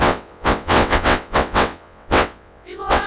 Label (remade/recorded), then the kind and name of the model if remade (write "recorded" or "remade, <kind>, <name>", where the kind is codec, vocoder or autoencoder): remade, vocoder, WaveNeXt